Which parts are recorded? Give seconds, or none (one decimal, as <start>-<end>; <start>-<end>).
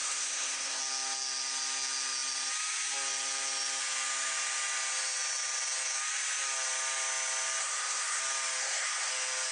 0.8-7.6; 8.2-8.6; 9.1-9.5